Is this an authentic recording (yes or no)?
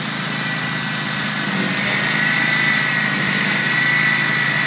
yes